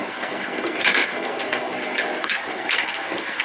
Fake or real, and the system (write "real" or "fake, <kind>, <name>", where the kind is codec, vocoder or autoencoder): fake, codec, SNAC